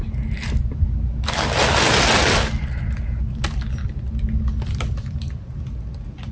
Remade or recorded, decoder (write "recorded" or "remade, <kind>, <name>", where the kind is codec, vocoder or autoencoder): recorded